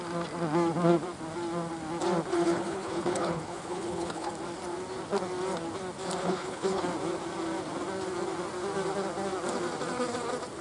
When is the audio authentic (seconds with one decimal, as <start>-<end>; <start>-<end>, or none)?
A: 0.0-2.3; 4.3-6.2; 6.8-10.6